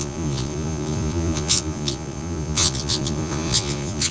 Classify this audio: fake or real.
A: fake